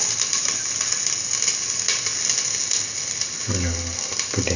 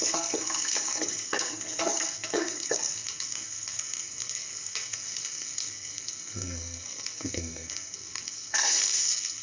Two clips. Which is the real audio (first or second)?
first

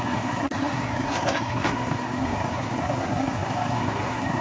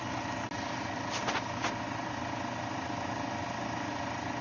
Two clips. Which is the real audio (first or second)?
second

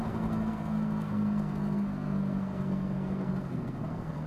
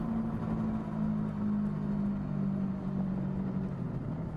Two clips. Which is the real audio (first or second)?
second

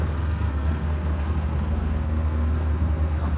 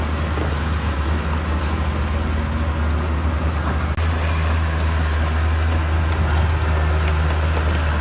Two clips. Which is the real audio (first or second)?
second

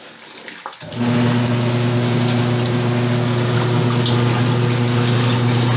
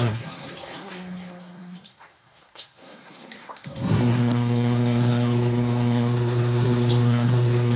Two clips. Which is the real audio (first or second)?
first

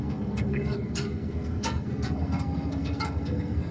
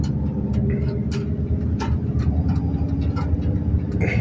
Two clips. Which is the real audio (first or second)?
second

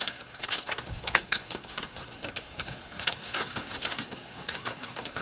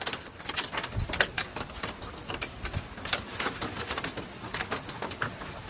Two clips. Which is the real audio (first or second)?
second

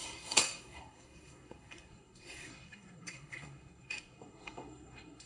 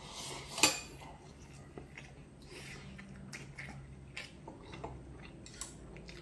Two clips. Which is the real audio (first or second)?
second